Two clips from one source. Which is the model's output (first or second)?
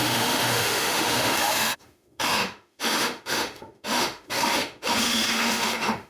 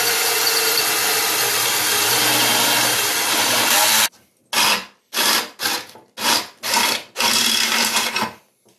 first